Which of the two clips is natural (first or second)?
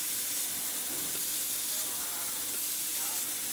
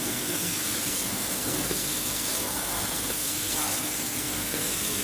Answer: first